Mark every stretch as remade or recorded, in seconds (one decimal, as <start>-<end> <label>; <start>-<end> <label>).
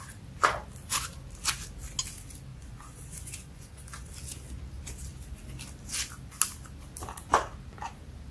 0.0-2.5 recorded; 2.5-4.1 remade; 4.1-8.3 recorded